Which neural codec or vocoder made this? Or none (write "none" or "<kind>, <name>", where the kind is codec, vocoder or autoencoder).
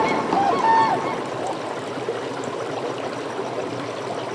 none